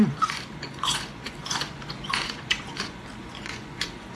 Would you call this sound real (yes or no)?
no